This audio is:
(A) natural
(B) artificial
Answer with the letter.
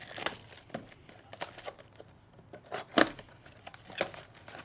A